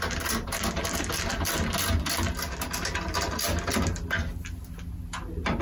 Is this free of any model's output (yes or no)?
yes